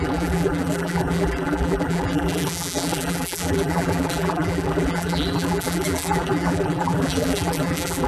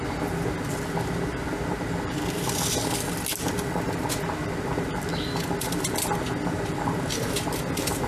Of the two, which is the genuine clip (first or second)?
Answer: second